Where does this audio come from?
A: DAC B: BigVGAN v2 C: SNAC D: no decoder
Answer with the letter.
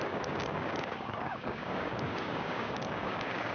A